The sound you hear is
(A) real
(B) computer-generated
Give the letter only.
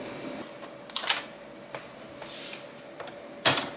A